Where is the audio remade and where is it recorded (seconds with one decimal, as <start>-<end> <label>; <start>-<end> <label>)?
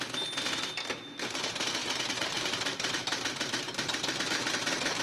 0.0-1.8 recorded; 1.8-5.0 remade